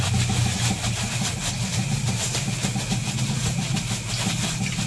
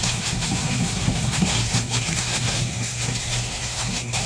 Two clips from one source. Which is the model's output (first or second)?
second